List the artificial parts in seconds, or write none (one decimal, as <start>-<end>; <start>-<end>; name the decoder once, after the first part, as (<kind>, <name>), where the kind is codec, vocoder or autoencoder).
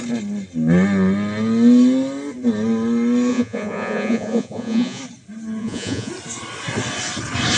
3.3-5.0 (vocoder, Vocos); 5.6-6.1